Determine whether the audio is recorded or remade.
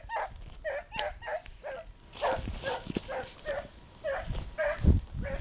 recorded